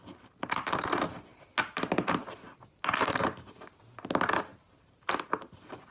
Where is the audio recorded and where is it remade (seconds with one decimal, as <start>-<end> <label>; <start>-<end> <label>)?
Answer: 0.0-4.5 recorded; 4.5-5.1 remade; 5.1-5.9 recorded